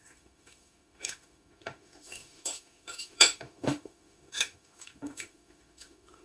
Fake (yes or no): yes